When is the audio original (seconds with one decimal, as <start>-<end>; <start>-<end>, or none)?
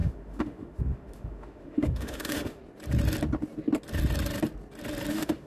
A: 2.6-5.1